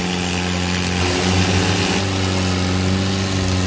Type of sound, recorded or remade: recorded